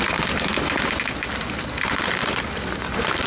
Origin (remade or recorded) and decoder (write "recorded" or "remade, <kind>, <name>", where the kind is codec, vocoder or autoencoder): recorded